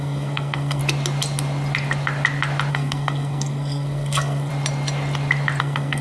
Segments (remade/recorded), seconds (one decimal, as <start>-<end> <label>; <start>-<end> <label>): 0.0-0.8 remade; 0.8-2.7 recorded; 2.7-4.5 remade; 4.5-5.6 recorded; 5.6-6.0 remade